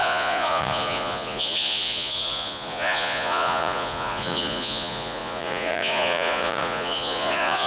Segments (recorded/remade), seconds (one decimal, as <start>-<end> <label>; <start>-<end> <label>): 0.0-7.7 remade